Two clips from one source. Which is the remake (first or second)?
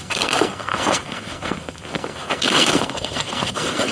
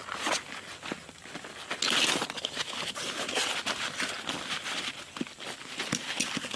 first